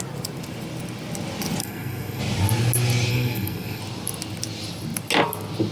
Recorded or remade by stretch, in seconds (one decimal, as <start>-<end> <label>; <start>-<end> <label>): 0.0-1.6 recorded; 1.6-2.2 remade; 2.2-3.1 recorded; 3.1-3.8 remade; 3.8-5.7 recorded